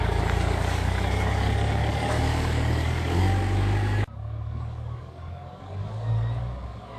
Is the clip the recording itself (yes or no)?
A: no